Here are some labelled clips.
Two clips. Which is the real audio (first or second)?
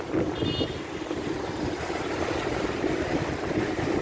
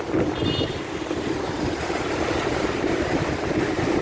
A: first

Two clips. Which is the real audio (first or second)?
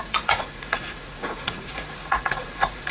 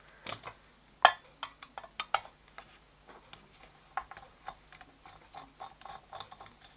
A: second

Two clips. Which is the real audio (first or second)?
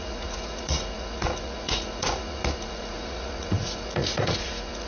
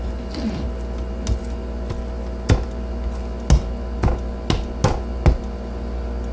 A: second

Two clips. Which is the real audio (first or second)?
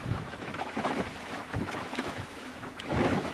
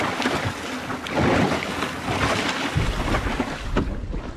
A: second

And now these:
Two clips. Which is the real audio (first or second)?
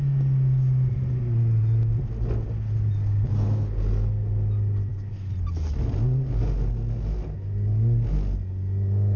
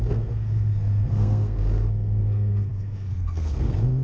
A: first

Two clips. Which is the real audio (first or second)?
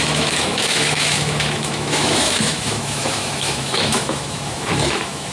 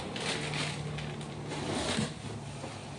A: second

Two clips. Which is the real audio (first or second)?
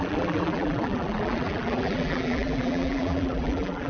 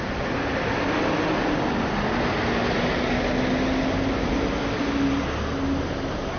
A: second